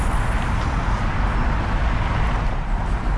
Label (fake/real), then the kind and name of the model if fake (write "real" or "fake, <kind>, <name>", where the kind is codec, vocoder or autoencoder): real